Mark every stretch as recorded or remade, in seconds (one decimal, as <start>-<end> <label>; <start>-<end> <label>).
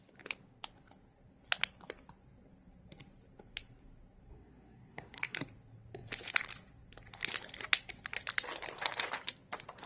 0.0-4.3 recorded; 4.3-5.4 remade; 5.4-9.9 recorded